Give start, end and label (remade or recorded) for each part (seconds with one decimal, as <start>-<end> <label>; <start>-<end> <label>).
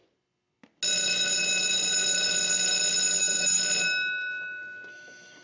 0.0-3.2 recorded; 3.2-3.6 remade; 3.6-4.9 recorded; 4.9-5.4 remade